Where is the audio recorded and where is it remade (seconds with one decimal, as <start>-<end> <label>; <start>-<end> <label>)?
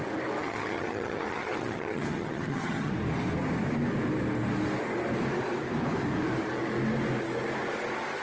0.0-0.4 recorded; 0.4-2.9 remade; 2.9-8.2 recorded